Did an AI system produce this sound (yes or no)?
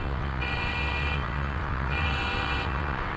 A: yes